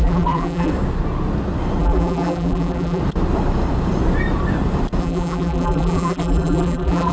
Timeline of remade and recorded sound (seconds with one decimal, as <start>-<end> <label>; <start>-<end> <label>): 0.0-0.7 remade; 0.7-1.8 recorded; 1.8-3.0 remade; 3.0-5.0 recorded; 5.0-7.1 remade